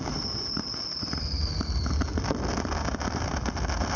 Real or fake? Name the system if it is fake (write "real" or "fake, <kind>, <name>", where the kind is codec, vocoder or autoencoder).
fake, vocoder, BigVGAN v2